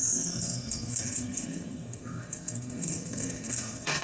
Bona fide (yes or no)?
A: no